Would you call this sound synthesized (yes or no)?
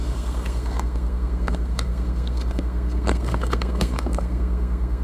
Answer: yes